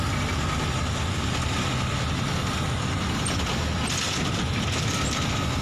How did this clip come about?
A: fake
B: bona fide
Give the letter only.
B